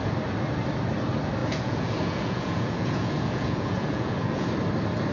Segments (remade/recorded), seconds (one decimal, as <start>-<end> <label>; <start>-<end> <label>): 0.0-1.4 recorded; 1.4-4.5 remade; 4.5-5.1 recorded